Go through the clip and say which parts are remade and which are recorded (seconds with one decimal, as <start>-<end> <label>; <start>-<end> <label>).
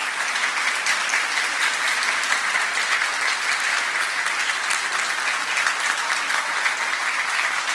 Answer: 0.0-2.6 remade; 2.6-7.7 recorded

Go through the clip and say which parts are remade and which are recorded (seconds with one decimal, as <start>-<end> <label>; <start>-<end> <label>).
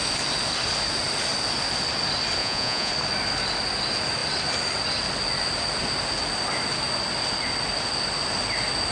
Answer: 0.0-2.4 recorded; 2.4-2.9 remade; 2.9-8.9 recorded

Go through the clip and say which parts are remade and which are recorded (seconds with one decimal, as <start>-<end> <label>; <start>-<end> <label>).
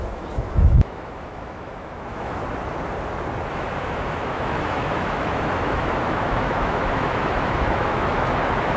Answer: 0.0-2.4 remade; 2.4-3.5 recorded; 3.5-8.8 remade